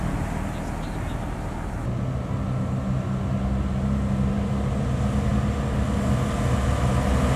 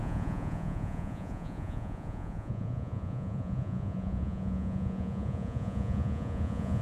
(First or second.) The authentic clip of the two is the first